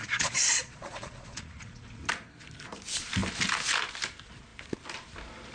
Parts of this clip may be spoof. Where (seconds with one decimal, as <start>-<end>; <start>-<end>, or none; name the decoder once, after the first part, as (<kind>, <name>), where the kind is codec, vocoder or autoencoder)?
0.0-2.0 (vocoder, Vocos)